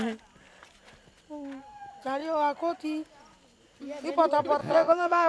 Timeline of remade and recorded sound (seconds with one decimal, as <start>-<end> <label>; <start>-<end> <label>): 0.0-4.6 recorded; 4.6-5.3 remade